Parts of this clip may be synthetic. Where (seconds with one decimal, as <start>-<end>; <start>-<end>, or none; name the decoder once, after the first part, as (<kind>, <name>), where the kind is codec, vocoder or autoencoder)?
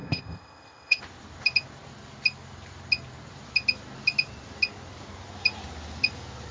0.0-1.0 (codec, ZipCodec)